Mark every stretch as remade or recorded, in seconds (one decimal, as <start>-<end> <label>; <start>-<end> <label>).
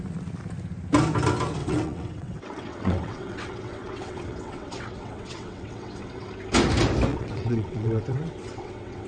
0.0-1.6 recorded; 1.6-6.3 remade; 6.3-7.1 recorded; 7.1-9.1 remade